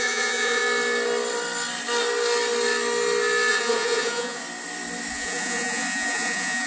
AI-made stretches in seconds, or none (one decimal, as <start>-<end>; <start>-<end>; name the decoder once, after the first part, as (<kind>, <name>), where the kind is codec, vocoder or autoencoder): 0.0-0.6 (vocoder, Vocos); 3.5-4.4; 5.1-6.7